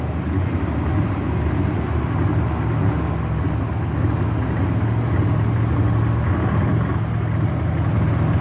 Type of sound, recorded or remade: recorded